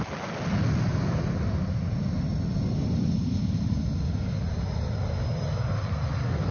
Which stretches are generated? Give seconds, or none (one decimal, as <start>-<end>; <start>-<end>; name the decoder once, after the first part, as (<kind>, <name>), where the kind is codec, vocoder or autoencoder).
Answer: none